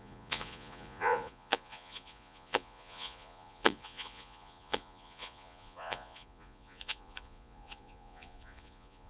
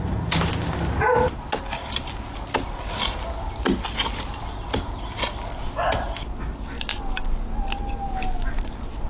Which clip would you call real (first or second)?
second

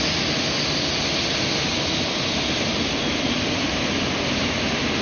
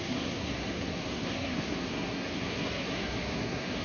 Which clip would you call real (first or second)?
first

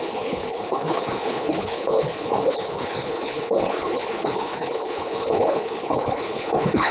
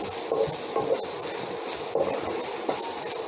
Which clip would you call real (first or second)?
second